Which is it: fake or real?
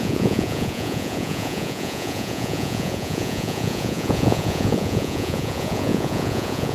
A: fake